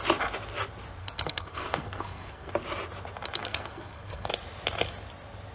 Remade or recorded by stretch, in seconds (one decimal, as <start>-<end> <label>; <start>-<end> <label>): 0.0-1.0 recorded; 1.0-2.5 remade; 2.5-3.4 recorded; 3.4-4.3 remade; 4.3-5.5 recorded